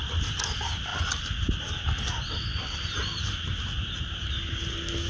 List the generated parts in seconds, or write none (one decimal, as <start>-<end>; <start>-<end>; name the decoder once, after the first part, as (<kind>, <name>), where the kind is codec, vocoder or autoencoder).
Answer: none